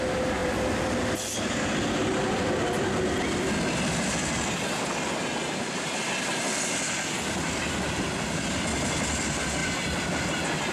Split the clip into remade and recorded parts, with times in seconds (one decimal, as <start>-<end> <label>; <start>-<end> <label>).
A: 0.0-0.4 recorded; 0.4-2.9 remade; 2.9-9.6 recorded; 9.6-10.7 remade